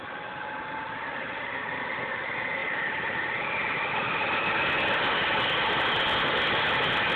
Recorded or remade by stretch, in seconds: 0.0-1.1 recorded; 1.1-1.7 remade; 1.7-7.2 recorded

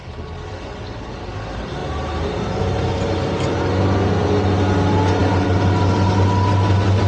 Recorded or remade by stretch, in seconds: 0.0-1.8 recorded; 1.8-3.6 remade; 3.6-7.1 recorded

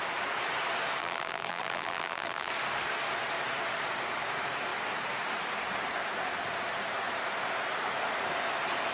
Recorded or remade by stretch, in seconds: 0.0-1.0 recorded; 1.0-2.5 remade; 2.5-8.9 recorded

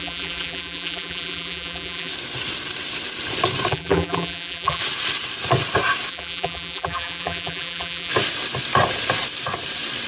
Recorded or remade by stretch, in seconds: 0.0-2.1 remade; 2.1-3.7 recorded; 3.7-4.8 remade; 4.8-6.1 recorded; 6.1-8.1 remade; 8.1-10.1 recorded

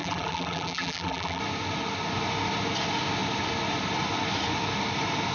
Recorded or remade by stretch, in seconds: 0.0-1.4 remade; 1.4-5.3 recorded

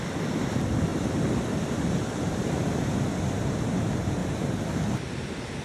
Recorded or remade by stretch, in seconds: 0.0-0.9 recorded; 0.9-3.6 remade; 3.6-4.2 recorded; 4.2-4.9 remade; 4.9-5.6 recorded